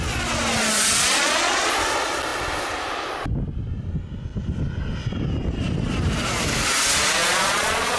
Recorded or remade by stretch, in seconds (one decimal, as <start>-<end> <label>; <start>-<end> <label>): 0.0-1.2 recorded; 1.2-1.7 remade; 1.7-7.2 recorded; 7.2-8.0 remade